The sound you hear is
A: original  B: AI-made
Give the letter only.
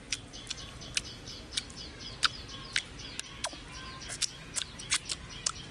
A